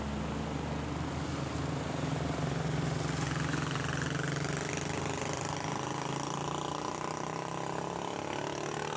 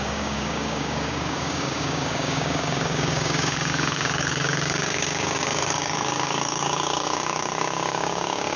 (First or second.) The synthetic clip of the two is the second